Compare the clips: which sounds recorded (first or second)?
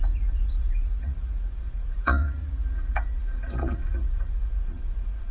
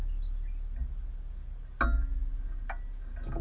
second